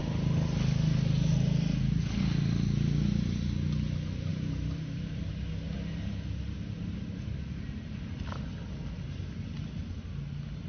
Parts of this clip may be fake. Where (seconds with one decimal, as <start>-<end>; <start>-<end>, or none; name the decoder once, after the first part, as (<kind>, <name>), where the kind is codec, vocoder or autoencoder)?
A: 4.3-5.3 (vocoder, BigVGAN v2)